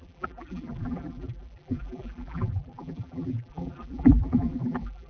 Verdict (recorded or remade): remade